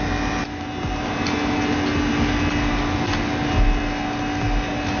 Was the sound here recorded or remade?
recorded